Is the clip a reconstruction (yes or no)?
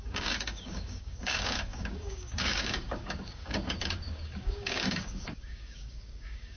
yes